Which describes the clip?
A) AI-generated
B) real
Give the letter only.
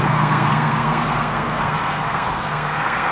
A